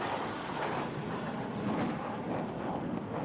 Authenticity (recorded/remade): recorded